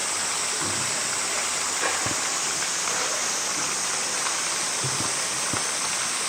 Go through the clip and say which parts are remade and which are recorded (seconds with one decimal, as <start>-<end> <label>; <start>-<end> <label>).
0.0-6.3 recorded